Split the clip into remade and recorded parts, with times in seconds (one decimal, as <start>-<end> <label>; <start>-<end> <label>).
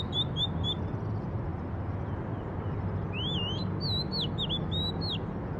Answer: 0.0-5.6 recorded